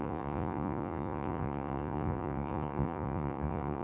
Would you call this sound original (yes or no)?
no